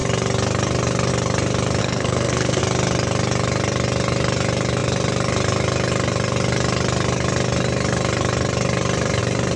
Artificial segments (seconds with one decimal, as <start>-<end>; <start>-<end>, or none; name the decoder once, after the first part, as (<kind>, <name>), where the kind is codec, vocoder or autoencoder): 1.8-2.6 (codec, SNAC)